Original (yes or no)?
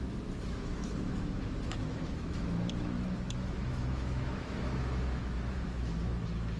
no